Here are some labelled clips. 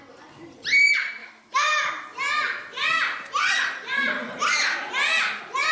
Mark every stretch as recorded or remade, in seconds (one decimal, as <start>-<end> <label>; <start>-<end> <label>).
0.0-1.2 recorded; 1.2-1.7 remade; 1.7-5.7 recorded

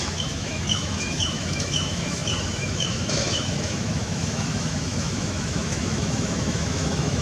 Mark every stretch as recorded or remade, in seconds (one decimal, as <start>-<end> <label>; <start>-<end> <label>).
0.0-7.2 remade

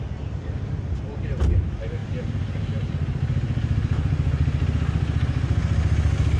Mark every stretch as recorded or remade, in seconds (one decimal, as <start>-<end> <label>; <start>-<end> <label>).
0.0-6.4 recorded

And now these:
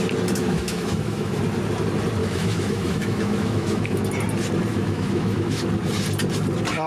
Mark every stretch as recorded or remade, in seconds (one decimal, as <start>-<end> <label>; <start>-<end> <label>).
0.0-0.4 recorded; 0.4-1.4 remade; 1.4-2.2 recorded; 2.2-4.0 remade; 4.0-4.7 recorded; 4.7-5.6 remade; 5.6-6.9 recorded